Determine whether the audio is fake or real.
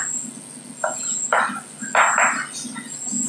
real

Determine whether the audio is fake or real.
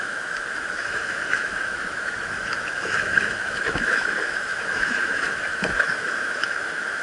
fake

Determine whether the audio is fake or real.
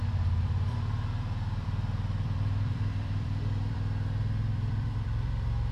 fake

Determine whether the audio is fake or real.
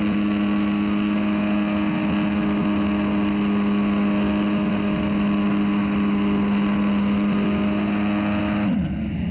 real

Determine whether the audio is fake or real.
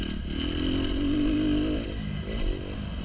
real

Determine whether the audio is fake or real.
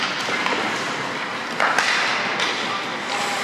real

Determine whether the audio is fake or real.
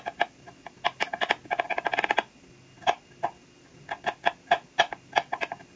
real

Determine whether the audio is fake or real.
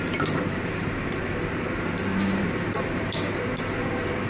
fake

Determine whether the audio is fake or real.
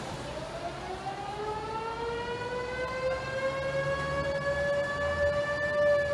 real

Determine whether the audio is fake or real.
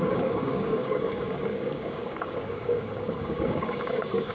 fake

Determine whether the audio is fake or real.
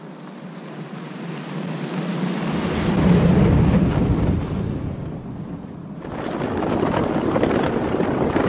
real